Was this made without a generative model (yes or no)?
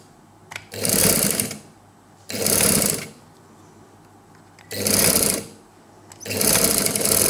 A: yes